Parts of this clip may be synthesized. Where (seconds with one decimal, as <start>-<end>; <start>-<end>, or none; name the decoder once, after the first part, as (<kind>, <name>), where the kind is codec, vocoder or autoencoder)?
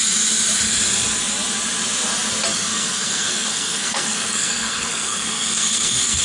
2.5-6.2 (codec, SNAC)